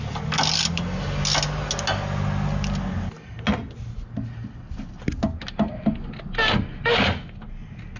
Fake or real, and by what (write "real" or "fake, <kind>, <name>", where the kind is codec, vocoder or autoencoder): real